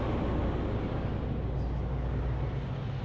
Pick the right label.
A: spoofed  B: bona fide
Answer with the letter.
B